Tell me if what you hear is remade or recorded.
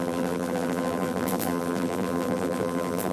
remade